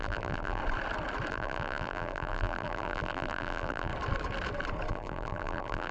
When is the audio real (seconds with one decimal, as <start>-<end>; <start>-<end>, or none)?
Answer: 0.6-1.3; 3.9-4.9